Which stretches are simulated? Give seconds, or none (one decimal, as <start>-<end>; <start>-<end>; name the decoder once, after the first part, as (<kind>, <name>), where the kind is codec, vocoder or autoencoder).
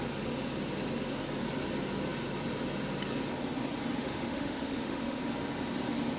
4.0-5.2 (autoencoder, DAC-VAE)